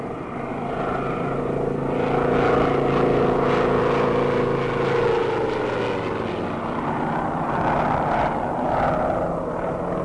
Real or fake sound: real